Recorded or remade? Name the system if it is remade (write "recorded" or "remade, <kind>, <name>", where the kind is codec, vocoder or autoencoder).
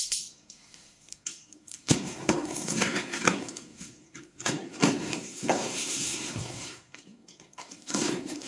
remade, codec, SNAC